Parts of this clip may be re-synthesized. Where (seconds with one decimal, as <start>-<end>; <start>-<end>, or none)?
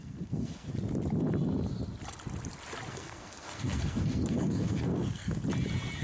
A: 0.0-0.7; 2.9-5.4